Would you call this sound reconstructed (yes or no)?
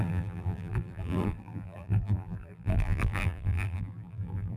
yes